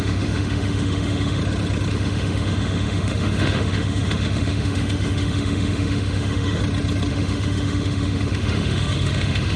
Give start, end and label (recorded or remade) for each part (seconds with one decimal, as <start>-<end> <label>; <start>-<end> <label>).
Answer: 0.0-1.4 remade; 1.4-1.9 recorded; 1.9-6.6 remade; 6.6-7.1 recorded; 7.1-9.6 remade